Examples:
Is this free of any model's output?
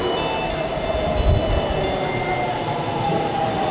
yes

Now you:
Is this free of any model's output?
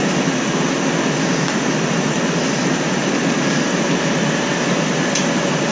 yes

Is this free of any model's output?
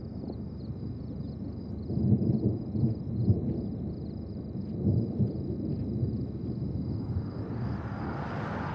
yes